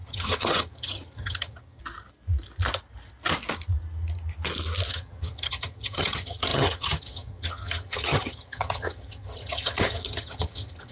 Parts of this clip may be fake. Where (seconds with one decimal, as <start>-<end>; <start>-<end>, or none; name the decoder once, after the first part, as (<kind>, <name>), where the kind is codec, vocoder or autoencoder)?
0.0-1.8 (vocoder, HiFi-GAN); 4.9-10.9